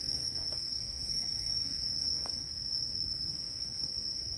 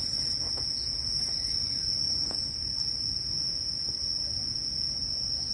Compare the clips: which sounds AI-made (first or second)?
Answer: first